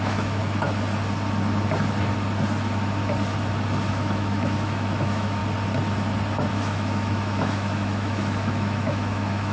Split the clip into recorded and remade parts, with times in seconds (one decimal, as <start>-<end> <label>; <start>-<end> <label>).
0.0-0.4 remade; 0.4-3.9 recorded; 3.9-5.4 remade; 5.4-6.5 recorded; 6.5-9.5 remade